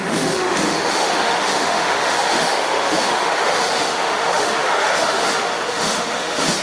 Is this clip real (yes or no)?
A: no